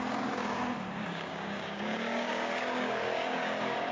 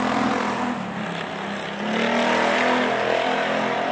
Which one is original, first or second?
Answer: second